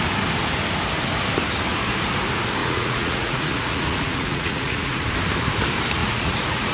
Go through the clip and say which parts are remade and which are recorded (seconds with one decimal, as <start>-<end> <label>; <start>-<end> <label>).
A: 0.0-2.6 recorded; 2.6-5.0 remade; 5.0-6.0 recorded; 6.0-6.7 remade